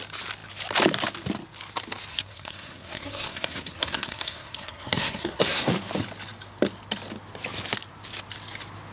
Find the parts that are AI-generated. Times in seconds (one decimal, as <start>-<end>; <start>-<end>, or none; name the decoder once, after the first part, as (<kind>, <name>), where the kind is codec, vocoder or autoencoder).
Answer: 2.1-5.7 (codec, SNAC)

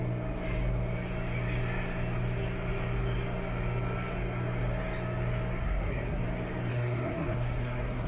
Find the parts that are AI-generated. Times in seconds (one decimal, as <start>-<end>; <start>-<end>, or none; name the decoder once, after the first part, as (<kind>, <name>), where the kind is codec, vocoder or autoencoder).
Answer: 5.6-6.2 (codec, SNAC); 6.7-8.1